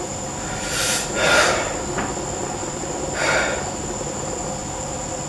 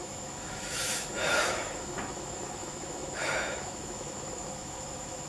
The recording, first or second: first